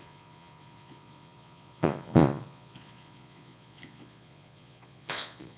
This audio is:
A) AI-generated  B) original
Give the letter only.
A